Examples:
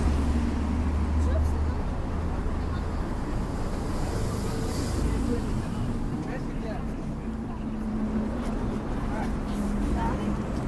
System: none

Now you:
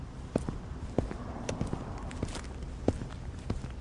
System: none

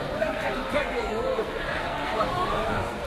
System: codec, SNAC